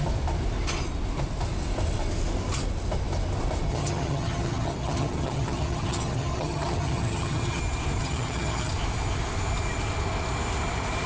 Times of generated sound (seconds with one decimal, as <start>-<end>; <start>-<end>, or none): 3.7-7.6; 8.0-8.7